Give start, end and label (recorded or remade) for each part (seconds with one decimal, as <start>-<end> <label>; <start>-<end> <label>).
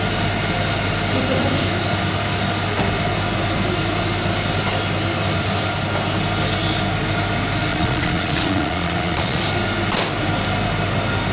0.0-7.7 recorded; 7.7-9.4 remade; 9.4-11.3 recorded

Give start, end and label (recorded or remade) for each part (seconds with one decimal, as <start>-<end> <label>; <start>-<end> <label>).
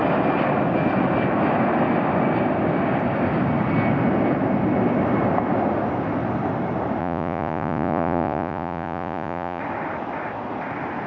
0.0-7.0 recorded; 7.0-9.6 remade; 9.6-11.1 recorded